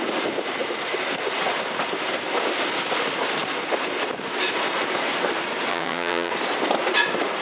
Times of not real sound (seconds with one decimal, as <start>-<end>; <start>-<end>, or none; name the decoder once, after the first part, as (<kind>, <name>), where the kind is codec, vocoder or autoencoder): 5.7-6.3 (vocoder, HiFi-GAN)